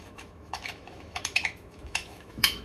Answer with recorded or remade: remade